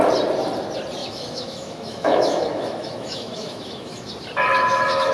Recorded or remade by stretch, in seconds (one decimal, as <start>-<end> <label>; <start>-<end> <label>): 0.0-1.0 recorded; 1.0-4.1 remade; 4.1-4.5 recorded; 4.5-5.1 remade